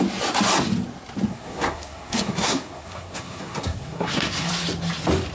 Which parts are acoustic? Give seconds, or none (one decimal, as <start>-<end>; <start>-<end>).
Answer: 0.0-1.3; 4.5-5.3